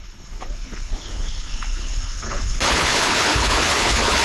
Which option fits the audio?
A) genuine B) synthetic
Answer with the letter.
B